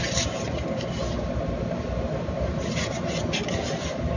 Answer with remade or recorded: recorded